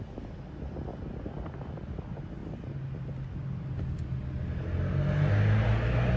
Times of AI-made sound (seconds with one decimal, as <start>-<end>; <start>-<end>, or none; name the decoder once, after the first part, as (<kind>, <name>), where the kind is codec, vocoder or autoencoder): none